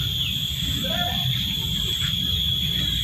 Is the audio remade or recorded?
remade